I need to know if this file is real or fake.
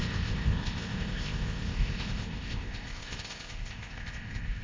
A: fake